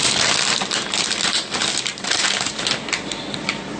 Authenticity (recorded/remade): recorded